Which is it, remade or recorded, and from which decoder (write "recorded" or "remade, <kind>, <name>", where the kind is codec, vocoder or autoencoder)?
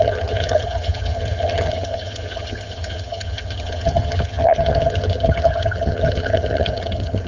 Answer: remade, vocoder, HiFi-GAN